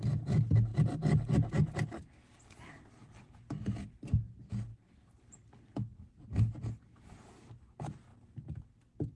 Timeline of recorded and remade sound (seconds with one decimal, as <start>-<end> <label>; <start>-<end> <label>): 0.0-9.2 recorded